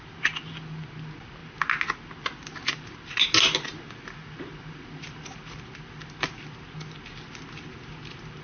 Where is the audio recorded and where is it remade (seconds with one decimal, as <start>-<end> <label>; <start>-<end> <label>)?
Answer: 0.0-8.4 recorded